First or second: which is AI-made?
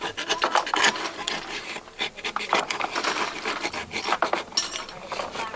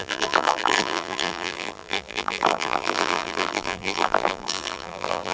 second